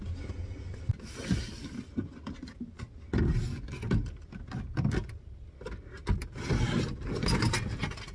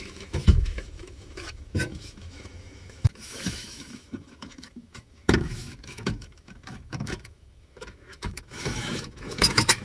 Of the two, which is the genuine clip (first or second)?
first